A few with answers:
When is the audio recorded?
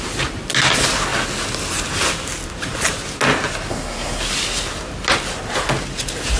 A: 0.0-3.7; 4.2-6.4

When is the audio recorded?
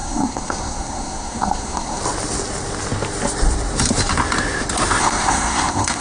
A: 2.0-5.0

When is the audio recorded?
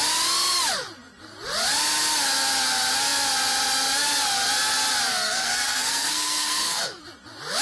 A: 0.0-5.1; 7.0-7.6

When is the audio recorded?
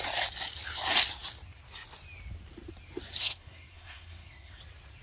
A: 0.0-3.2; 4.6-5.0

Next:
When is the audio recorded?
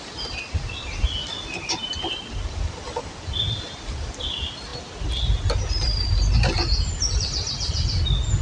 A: 0.0-8.4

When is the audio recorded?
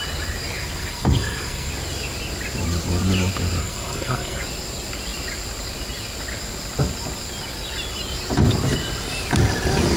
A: 0.0-0.8; 1.7-3.6; 4.4-10.0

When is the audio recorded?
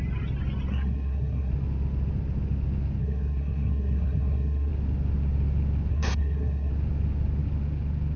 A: 0.0-0.7; 1.5-3.0; 4.7-5.9; 6.7-8.2